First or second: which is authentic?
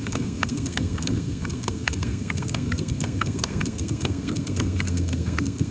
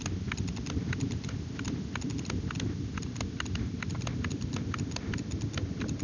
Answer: second